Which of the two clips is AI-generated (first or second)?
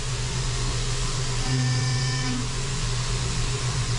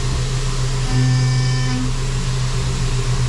first